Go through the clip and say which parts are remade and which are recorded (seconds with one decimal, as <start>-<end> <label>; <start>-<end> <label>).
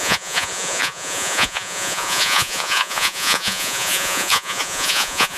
0.0-5.4 remade